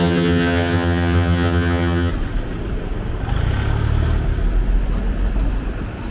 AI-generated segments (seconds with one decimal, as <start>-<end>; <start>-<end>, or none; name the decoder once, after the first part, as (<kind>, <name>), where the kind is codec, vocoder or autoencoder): 0.0-2.1 (vocoder, HiFi-GAN)